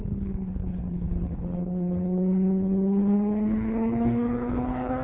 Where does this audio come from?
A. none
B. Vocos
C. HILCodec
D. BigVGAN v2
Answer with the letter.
C